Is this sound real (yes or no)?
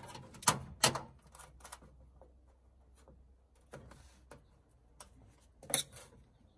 yes